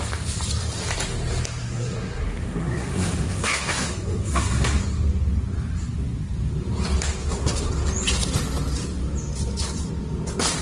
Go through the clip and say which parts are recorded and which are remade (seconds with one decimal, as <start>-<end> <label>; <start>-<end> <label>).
0.0-1.6 recorded; 1.6-4.8 remade; 4.8-7.2 recorded; 7.2-7.7 remade; 7.7-10.6 recorded